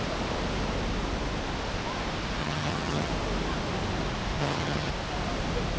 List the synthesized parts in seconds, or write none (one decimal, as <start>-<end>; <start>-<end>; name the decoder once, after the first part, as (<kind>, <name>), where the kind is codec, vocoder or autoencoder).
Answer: 2.4-3.1 (vocoder, HiFi-GAN); 4.4-4.9